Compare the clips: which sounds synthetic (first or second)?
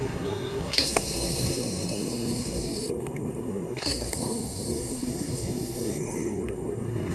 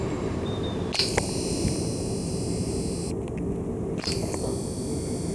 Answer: first